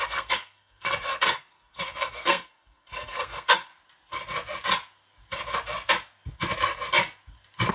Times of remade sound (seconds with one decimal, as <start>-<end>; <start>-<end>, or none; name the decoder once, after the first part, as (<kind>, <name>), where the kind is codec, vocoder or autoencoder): 0.0-3.7 (codec, SNAC)